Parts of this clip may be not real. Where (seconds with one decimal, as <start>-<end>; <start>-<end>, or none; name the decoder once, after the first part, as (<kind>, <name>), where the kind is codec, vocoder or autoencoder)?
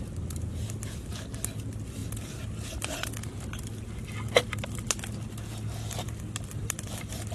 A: none